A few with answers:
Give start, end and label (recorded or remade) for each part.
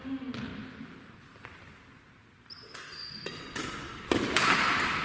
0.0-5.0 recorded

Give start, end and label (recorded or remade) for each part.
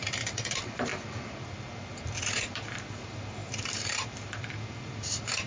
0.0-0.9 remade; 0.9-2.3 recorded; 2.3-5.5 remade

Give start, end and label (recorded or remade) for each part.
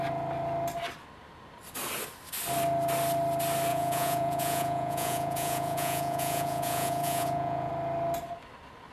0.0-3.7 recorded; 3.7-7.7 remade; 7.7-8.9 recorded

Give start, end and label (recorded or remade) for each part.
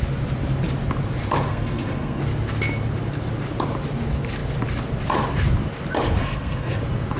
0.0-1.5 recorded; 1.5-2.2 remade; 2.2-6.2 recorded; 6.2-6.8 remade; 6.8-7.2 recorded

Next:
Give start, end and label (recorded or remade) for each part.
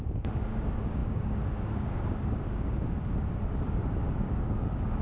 0.0-5.0 remade